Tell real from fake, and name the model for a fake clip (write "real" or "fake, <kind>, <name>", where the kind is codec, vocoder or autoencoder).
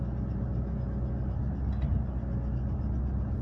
real